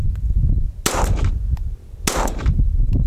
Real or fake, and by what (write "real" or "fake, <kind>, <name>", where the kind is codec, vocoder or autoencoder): real